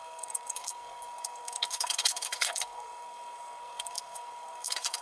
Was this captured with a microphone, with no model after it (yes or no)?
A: no